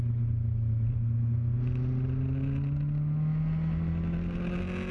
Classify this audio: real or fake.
real